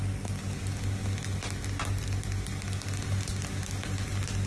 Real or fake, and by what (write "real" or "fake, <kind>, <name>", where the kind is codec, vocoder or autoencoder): real